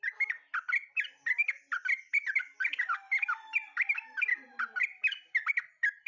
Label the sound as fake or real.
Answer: fake